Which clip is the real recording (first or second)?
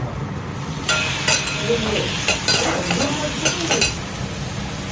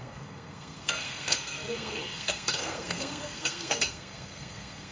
first